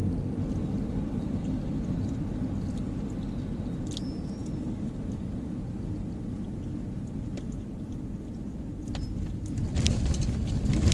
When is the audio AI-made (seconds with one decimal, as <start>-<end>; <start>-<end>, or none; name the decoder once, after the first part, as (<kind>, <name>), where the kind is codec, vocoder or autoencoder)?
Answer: none